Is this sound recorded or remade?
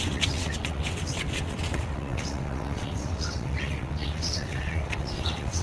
remade